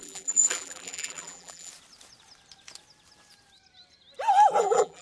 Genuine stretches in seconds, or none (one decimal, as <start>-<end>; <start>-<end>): 1.7-4.6

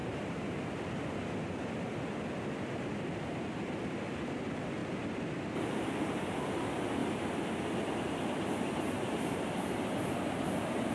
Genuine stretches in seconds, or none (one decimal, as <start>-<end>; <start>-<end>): 4.8-5.9; 7.0-10.9